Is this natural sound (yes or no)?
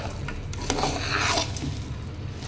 yes